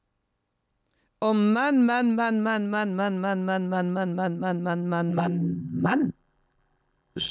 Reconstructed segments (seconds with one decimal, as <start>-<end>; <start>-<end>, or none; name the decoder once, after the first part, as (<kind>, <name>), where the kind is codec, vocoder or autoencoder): 5.1-7.3 (vocoder, BigVGAN v2)

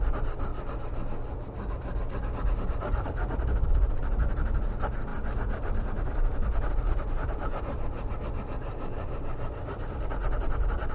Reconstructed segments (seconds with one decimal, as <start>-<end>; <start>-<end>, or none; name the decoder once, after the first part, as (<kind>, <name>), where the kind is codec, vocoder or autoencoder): 0.0-0.5 (vocoder, BigVGAN v2); 1.7-10.9

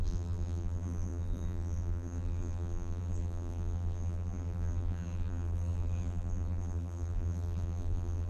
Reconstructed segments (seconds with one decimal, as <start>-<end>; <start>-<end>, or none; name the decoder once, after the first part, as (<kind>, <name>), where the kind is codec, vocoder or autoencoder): 0.0-8.3 (vocoder, BigVGAN v2)

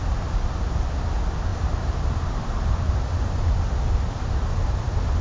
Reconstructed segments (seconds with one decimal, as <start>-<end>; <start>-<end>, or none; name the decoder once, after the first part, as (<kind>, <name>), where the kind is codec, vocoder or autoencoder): 1.5-2.1 (vocoder, BigVGAN v2)

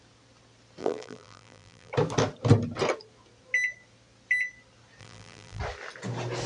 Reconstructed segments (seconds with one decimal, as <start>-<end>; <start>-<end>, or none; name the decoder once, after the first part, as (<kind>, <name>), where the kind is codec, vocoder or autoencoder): 0.8-1.9 (vocoder, BigVGAN v2); 5.0-5.6